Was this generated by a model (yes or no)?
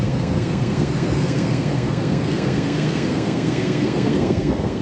yes